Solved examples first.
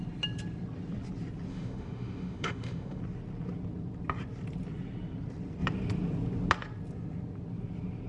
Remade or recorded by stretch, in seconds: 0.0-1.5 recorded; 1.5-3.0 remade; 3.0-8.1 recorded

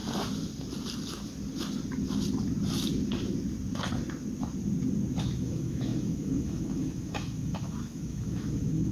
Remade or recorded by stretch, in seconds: 0.0-5.2 recorded; 5.2-8.9 remade

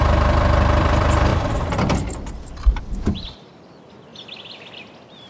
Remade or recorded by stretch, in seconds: 0.0-4.1 remade; 4.1-4.7 recorded; 4.7-5.3 remade